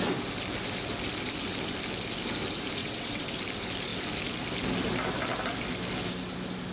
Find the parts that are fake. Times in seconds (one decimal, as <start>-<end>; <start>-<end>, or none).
2.8-3.3